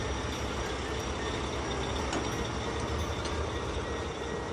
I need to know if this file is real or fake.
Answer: real